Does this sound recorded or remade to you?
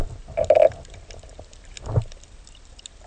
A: recorded